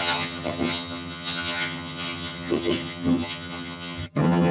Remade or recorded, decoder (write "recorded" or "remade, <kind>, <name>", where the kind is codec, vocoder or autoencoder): remade, vocoder, HiFi-GAN